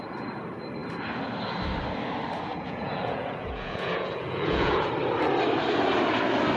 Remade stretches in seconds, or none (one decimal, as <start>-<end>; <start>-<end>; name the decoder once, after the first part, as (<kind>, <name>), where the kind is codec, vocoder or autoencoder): 2.5-4.9 (vocoder, Vocos)

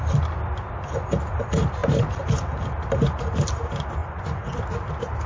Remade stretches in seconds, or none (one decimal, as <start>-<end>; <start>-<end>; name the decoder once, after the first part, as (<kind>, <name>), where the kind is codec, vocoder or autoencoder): 4.0-4.6 (vocoder, Vocos)

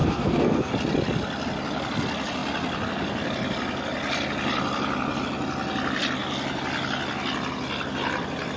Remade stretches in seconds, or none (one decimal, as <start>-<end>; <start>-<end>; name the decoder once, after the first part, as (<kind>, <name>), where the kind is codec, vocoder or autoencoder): 0.0-0.7 (codec, SNAC)

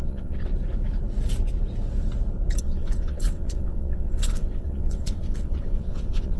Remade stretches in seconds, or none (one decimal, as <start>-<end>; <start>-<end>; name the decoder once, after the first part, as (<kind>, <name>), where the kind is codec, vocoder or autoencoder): 0.0-0.5 (vocoder, WaveNeXt); 2.6-6.4